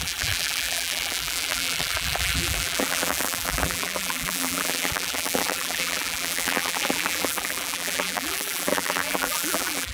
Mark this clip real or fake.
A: fake